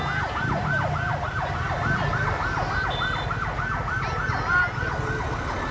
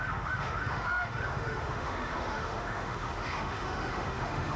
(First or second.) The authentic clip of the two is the first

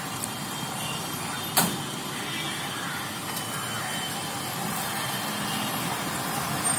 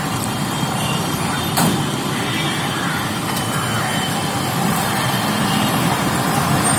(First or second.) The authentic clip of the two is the first